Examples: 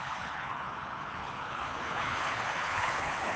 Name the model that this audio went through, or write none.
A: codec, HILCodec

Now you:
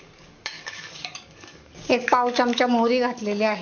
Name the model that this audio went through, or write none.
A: codec, DAC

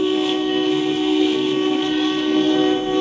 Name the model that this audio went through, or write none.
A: codec, SNAC